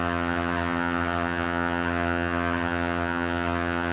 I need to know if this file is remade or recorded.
remade